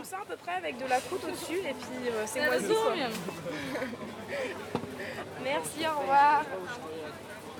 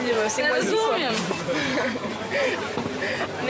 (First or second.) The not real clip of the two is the second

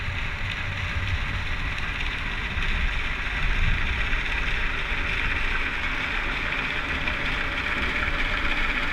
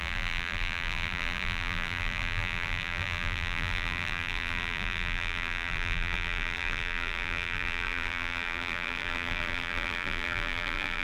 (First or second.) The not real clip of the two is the second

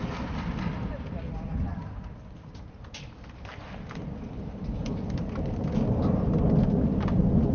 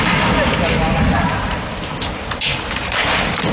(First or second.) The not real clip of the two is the second